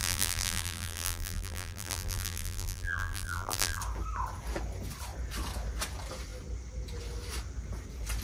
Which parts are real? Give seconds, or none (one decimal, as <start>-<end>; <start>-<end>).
3.8-8.2